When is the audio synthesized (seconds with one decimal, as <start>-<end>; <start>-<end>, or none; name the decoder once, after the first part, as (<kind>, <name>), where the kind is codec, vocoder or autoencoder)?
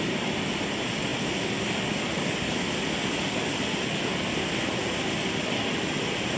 none